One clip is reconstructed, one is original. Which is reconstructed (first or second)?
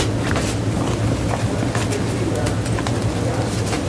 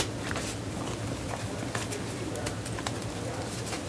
second